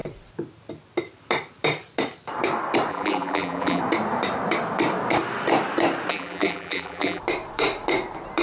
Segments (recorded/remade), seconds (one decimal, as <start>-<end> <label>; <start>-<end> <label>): 0.0-2.9 recorded; 2.9-3.8 remade; 3.8-6.1 recorded; 6.1-7.2 remade; 7.2-8.4 recorded